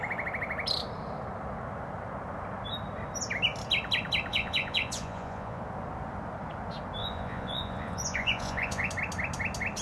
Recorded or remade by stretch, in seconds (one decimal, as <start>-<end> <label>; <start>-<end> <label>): 0.0-4.3 recorded; 4.3-5.6 remade; 5.6-7.0 recorded; 7.0-8.9 remade; 8.9-9.8 recorded